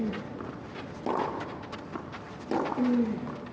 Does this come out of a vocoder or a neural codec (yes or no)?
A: no